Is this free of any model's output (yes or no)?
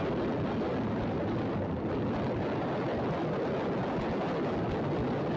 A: yes